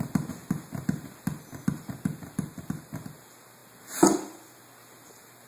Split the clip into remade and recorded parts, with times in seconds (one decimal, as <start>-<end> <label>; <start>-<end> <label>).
0.0-5.5 recorded

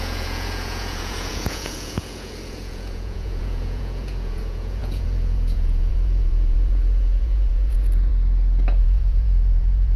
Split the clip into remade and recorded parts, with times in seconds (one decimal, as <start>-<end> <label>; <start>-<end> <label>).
0.0-8.1 remade; 8.1-8.8 recorded; 8.8-10.0 remade

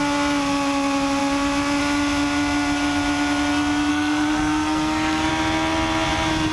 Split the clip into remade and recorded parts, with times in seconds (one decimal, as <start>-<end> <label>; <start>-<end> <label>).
0.0-3.9 recorded; 3.9-5.3 remade; 5.3-6.5 recorded

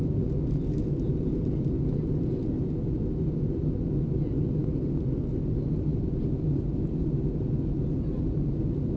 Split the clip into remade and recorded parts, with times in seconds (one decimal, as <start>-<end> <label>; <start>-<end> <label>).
0.0-9.0 recorded

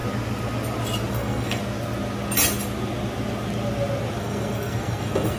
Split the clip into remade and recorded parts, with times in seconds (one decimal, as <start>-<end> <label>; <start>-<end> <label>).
0.0-1.1 recorded; 1.1-1.6 remade; 1.6-4.2 recorded; 4.2-5.4 remade

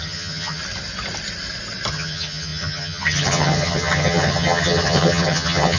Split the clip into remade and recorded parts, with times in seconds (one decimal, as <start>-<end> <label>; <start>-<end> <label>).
0.0-0.6 remade; 0.6-1.9 recorded; 1.9-5.8 remade

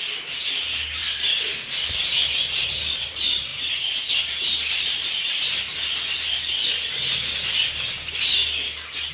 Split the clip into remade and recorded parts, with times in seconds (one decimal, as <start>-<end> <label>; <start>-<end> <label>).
0.0-9.1 recorded

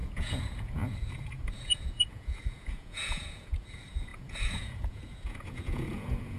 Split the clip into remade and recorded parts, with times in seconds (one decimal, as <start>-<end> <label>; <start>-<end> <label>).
0.0-6.4 remade